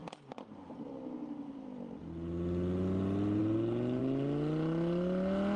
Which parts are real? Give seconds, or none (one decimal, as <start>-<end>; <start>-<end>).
0.0-5.6